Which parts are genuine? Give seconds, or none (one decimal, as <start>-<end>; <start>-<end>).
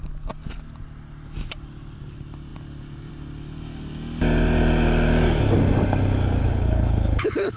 0.0-6.4